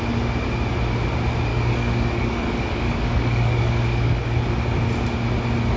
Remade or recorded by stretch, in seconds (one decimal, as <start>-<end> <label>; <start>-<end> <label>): 0.0-1.5 recorded; 1.5-4.2 remade; 4.2-5.8 recorded